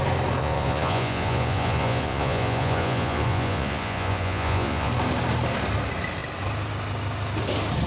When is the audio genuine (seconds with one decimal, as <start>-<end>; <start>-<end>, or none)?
0.0-0.4; 4.9-7.9